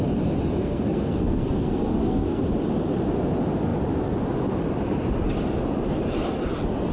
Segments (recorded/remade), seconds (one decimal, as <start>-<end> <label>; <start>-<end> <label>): 0.0-0.6 recorded; 0.6-2.4 remade; 2.4-6.9 recorded